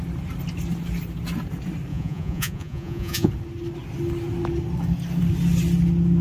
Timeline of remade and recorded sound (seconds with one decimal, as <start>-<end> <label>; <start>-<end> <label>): 0.0-1.9 recorded; 1.9-3.3 remade; 3.3-6.2 recorded